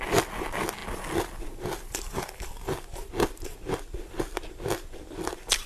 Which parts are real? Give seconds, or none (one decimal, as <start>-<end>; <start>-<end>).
0.0-5.7